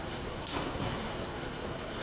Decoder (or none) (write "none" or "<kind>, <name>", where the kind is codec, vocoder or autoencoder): codec, SNAC